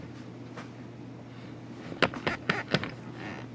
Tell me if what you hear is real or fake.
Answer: real